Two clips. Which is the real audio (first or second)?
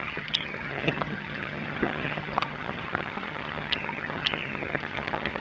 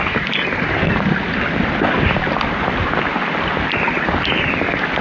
second